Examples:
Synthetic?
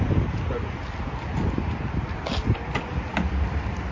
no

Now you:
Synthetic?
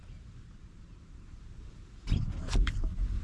yes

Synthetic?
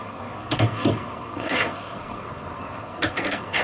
yes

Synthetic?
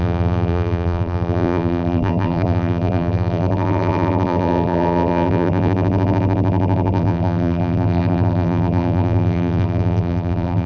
yes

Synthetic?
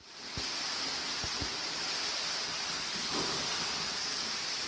no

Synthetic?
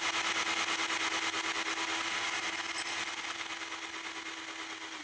no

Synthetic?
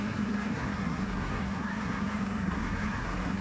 yes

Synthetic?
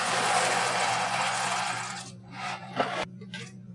yes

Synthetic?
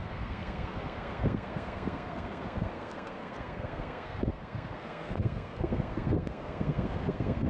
yes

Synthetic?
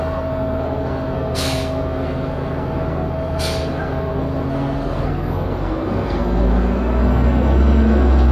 yes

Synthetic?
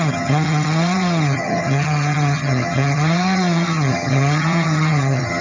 yes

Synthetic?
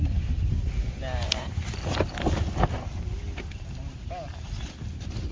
no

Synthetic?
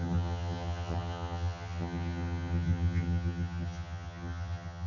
yes